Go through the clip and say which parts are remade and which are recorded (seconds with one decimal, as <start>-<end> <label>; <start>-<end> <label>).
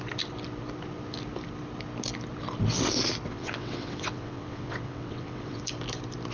0.0-3.3 recorded; 3.3-5.6 remade; 5.6-6.3 recorded